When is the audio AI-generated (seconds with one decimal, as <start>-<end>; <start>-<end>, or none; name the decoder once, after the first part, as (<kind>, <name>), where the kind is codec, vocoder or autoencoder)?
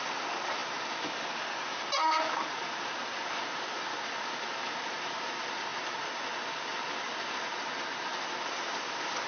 none